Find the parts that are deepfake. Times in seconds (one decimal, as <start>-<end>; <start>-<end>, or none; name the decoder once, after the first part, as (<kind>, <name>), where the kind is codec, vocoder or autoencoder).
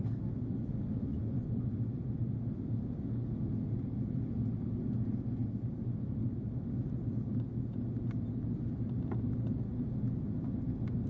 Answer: 1.1-1.6 (vocoder, Vocos)